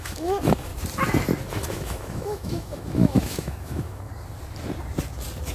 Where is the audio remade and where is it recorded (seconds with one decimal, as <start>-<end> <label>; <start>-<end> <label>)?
0.0-0.7 remade; 0.7-1.7 recorded; 1.7-4.1 remade; 4.1-5.5 recorded